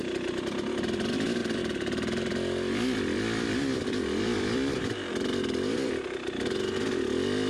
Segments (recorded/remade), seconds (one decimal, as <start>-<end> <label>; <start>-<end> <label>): 0.0-1.4 recorded; 1.4-5.9 remade; 5.9-7.5 recorded

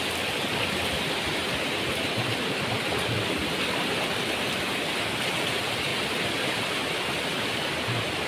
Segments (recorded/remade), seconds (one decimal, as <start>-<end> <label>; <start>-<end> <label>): 0.0-5.9 remade; 5.9-6.5 recorded; 6.5-8.3 remade

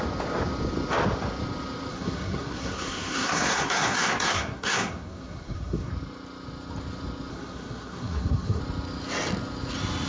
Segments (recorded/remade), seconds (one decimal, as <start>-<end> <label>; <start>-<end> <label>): 0.0-1.9 recorded; 1.9-5.9 remade; 5.9-7.3 recorded; 7.3-8.6 remade; 8.6-10.1 recorded